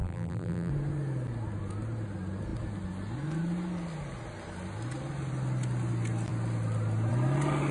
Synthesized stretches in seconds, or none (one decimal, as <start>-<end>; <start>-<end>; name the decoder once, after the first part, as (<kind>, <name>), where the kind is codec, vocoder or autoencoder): 0.0-0.7 (vocoder, BigVGAN v2)